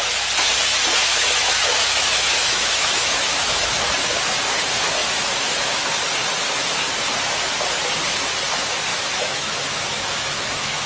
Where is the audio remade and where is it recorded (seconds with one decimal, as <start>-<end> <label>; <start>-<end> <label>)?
0.0-1.1 recorded; 1.1-3.9 remade; 3.9-8.9 recorded; 8.9-10.9 remade